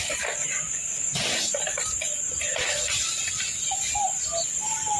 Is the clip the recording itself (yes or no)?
yes